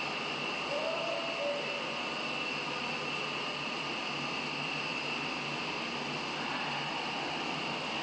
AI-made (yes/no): no